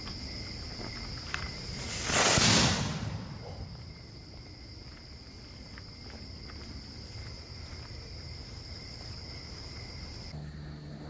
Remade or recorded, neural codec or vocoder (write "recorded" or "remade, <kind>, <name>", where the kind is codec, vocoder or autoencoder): recorded